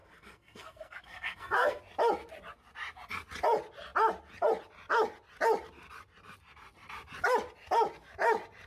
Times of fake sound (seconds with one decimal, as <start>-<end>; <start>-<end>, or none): 0.0-1.8